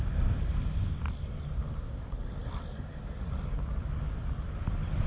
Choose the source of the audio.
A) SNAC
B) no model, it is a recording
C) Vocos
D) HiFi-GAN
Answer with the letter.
B